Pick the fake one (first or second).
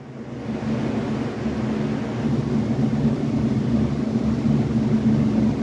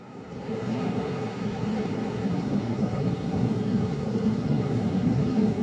second